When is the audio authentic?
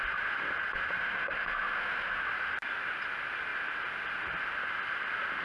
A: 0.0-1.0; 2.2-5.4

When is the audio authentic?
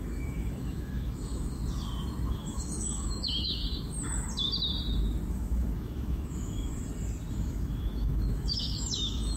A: 1.6-2.3; 3.6-5.3; 6.7-7.3